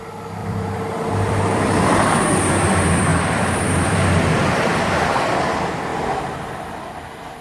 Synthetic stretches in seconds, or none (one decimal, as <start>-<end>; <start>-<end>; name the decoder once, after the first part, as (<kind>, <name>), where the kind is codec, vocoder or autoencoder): 0.4-2.5 (vocoder, BigVGAN v2); 3.1-3.6; 4.7-5.2